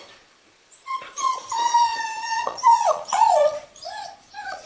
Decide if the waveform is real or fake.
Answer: fake